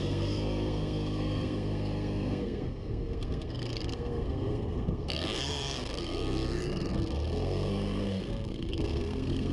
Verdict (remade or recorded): remade